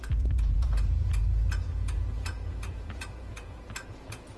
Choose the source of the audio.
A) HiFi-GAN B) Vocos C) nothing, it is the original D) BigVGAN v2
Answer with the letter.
B